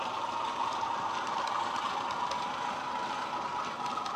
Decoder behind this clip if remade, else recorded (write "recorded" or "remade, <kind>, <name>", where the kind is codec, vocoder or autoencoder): recorded